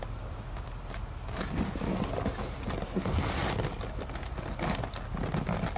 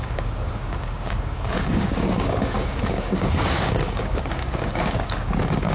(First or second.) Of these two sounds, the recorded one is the first